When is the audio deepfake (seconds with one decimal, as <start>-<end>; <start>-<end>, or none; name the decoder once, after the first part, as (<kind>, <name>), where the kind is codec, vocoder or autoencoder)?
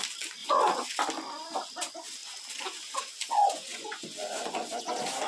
0.4-1.0 (vocoder, Vocos); 3.4-4.8